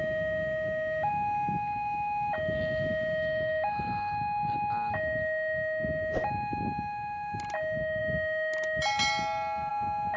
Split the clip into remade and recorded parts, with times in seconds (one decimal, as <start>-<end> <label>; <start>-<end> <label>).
0.0-10.2 recorded